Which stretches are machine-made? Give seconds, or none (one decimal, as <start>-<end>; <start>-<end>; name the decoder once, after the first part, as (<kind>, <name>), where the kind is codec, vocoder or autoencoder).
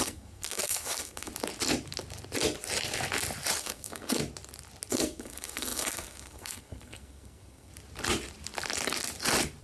0.0-1.3 (codec, SNAC); 3.6-4.2; 4.9-7.7